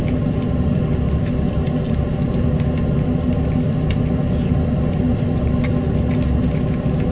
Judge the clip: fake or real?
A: real